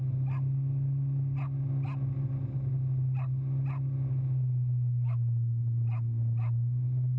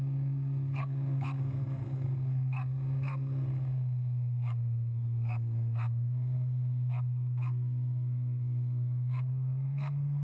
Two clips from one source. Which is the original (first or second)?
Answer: first